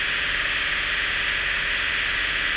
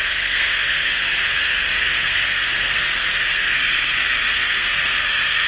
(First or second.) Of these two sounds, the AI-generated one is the second